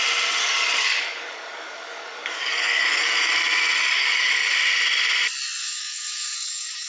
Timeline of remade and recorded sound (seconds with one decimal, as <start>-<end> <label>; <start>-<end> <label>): 0.0-0.4 recorded; 0.4-3.3 remade; 3.3-3.8 recorded; 3.8-4.5 remade; 4.5-5.6 recorded; 5.6-6.9 remade